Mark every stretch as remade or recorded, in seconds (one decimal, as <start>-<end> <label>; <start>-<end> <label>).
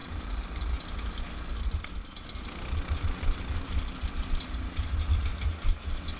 0.0-0.8 remade; 0.8-6.2 recorded